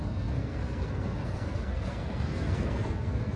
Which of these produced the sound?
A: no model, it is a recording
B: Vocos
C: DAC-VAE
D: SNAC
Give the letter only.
D